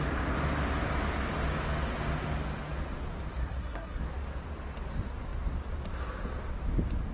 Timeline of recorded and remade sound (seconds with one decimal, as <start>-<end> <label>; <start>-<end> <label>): 0.0-3.4 recorded; 3.4-4.0 remade; 4.0-7.1 recorded